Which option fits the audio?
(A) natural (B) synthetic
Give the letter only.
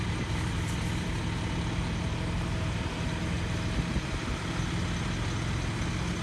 A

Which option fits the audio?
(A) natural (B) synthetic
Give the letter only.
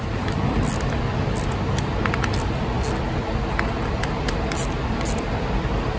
A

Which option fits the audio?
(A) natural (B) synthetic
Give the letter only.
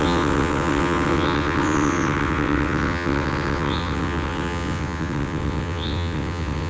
B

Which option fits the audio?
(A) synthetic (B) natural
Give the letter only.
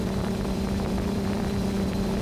A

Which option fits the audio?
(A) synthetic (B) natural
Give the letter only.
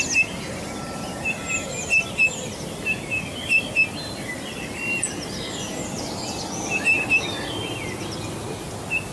B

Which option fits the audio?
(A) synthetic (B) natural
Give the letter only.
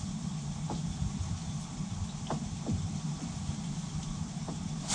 B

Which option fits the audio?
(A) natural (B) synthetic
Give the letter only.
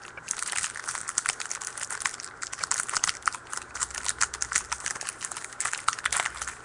A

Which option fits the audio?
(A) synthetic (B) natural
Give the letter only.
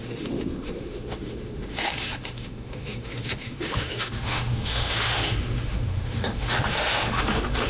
A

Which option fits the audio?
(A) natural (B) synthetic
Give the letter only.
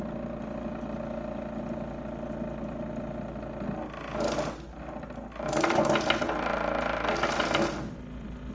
A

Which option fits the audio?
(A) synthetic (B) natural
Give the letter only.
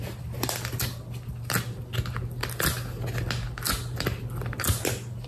B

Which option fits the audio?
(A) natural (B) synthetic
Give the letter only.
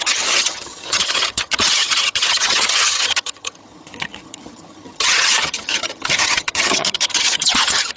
B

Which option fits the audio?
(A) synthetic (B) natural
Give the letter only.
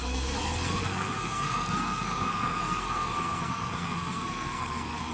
A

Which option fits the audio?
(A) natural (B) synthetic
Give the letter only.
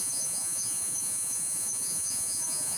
B